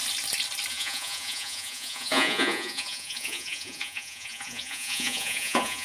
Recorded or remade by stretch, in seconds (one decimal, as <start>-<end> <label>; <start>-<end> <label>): 0.0-0.7 recorded; 0.7-5.8 remade